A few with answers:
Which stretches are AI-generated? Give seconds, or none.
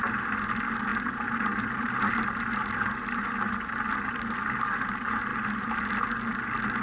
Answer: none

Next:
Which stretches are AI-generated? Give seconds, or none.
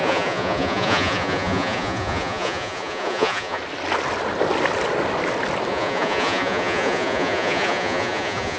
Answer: 0.0-3.6 (vocoder, Vocos); 5.7-8.6